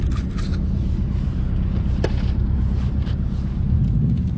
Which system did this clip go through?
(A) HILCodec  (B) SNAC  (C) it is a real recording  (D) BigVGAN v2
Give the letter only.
D